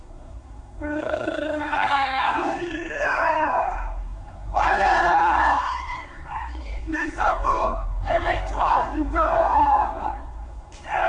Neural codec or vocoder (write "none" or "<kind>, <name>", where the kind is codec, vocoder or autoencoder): codec, SNAC